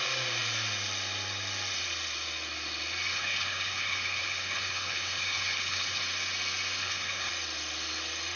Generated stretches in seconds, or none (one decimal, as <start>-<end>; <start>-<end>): 3.1-6.0; 6.8-7.3